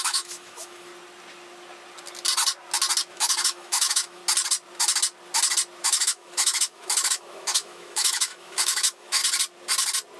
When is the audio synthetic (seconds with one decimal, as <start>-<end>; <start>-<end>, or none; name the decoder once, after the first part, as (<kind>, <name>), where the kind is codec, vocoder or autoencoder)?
0.0-0.9 (autoencoder, DAC-VAE); 3.1-4.2; 5.8-9.2